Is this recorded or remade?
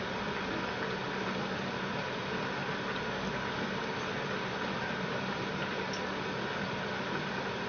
recorded